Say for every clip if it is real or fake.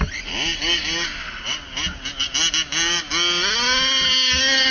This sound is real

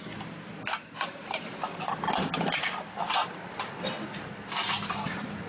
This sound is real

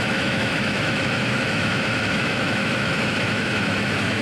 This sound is fake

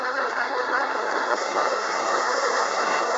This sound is fake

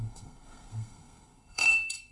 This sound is fake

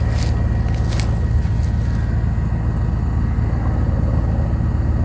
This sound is real